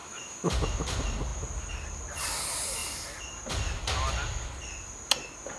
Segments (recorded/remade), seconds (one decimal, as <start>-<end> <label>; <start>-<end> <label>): 0.0-0.5 remade; 0.5-5.6 recorded